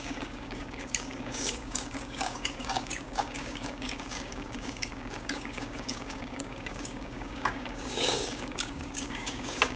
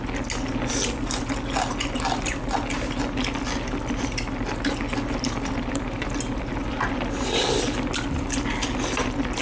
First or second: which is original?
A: second